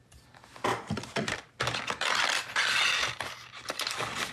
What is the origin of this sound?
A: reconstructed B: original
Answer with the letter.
B